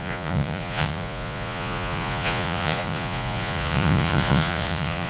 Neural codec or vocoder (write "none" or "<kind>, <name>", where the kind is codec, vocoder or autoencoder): vocoder, Vocos